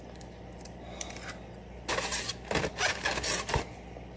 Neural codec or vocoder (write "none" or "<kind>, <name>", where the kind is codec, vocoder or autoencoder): none